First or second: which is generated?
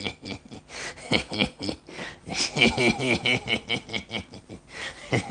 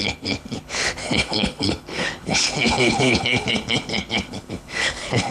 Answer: second